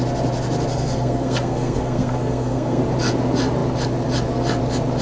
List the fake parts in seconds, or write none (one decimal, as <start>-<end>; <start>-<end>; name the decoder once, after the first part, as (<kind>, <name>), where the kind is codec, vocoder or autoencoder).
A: 0.7-2.8 (codec, SNAC)